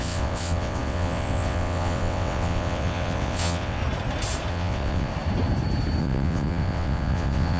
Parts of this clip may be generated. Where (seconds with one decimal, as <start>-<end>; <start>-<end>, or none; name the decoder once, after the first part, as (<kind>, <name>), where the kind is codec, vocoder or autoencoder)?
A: 0.0-3.8 (vocoder, WaveNeXt); 4.5-5.1; 6.0-7.6

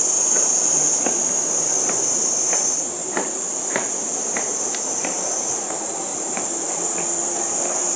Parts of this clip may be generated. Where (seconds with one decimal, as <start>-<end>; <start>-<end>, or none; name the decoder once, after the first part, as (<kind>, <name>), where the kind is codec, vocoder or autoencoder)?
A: 3.0-3.6 (vocoder, BigVGAN v2); 6.1-6.8

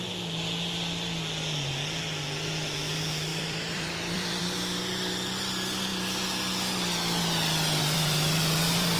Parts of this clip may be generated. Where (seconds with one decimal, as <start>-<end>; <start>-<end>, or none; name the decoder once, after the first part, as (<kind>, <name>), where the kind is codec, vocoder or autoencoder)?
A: 3.3-4.4 (vocoder, BigVGAN v2); 7.8-9.0

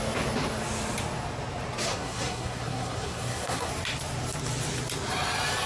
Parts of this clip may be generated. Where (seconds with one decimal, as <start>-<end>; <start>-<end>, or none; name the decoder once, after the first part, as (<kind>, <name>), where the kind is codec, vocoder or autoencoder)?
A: 1.9-3.7 (codec, SNAC)

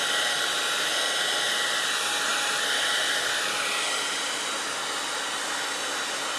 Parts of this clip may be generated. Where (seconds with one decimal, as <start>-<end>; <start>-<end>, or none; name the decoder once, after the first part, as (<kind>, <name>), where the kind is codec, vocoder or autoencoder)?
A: none

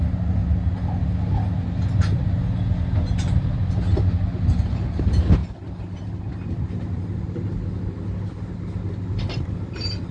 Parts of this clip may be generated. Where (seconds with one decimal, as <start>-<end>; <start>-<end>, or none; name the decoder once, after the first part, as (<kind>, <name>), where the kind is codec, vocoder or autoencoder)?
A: none